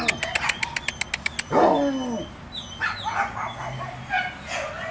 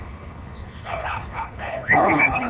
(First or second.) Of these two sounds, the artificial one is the second